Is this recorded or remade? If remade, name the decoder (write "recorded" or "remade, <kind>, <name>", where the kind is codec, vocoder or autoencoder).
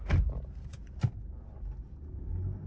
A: recorded